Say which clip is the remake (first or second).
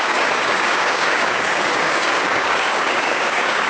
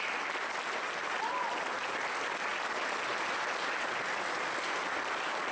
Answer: first